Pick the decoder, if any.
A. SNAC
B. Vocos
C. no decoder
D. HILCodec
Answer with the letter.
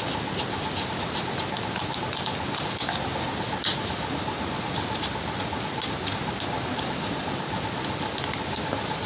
C